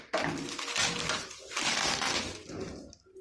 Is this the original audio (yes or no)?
yes